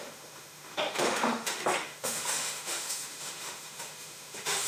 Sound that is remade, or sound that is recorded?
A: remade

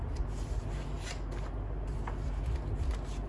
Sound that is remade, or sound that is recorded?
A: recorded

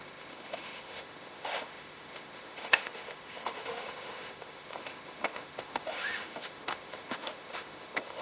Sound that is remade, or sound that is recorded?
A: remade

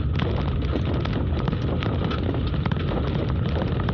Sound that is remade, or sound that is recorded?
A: recorded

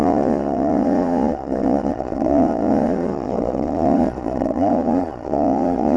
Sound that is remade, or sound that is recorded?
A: remade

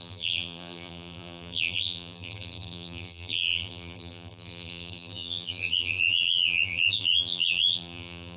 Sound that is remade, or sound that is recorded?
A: remade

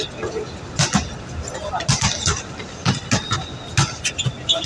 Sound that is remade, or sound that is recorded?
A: recorded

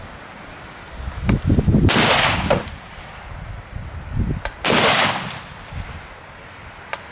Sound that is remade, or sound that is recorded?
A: recorded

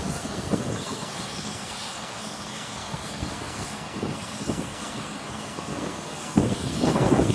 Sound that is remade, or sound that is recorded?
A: remade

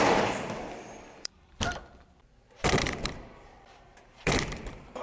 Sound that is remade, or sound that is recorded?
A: remade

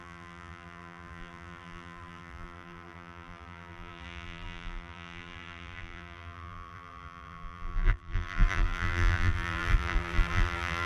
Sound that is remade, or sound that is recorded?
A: remade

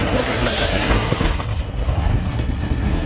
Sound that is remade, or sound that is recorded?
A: remade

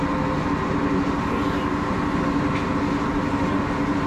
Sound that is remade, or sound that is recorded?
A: recorded